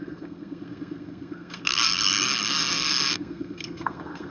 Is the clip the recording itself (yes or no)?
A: no